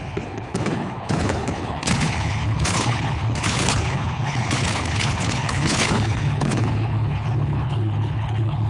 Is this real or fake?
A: fake